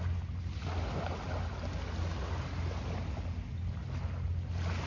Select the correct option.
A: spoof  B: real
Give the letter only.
B